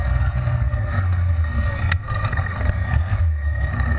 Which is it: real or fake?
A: fake